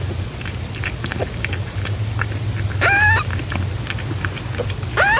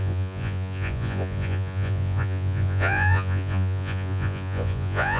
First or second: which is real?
first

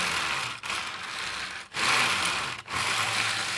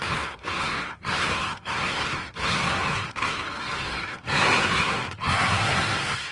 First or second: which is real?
first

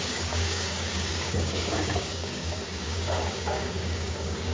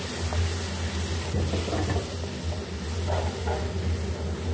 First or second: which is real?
second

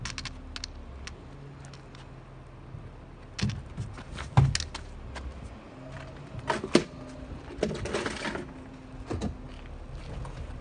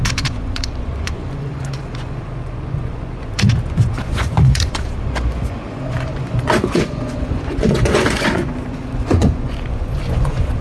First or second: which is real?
first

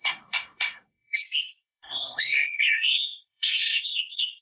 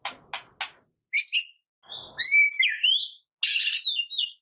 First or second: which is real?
second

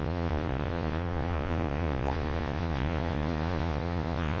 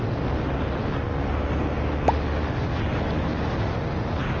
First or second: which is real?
second